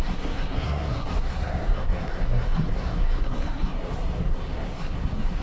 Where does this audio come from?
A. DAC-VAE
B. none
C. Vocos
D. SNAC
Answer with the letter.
D